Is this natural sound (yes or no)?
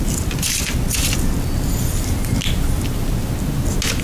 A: yes